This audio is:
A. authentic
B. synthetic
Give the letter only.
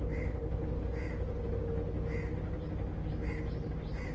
A